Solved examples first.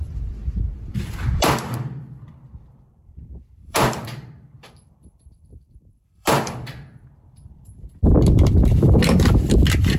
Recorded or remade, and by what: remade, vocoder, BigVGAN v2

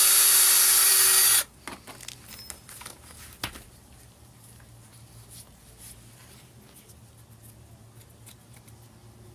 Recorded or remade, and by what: recorded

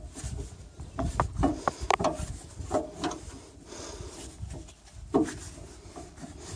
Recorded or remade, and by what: recorded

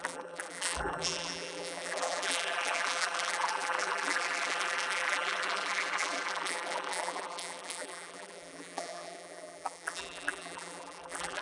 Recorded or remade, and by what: remade, vocoder, BigVGAN v2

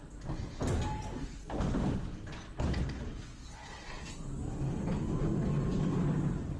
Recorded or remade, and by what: recorded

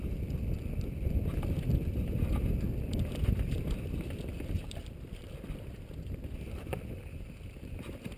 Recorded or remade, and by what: recorded